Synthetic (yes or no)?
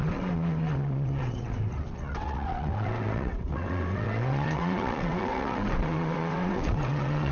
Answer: yes